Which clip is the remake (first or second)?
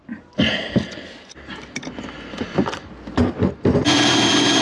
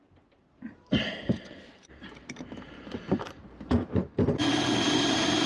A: second